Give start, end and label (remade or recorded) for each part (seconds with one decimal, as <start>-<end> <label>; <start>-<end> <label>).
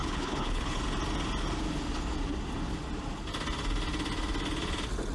0.0-0.8 remade; 0.8-5.1 recorded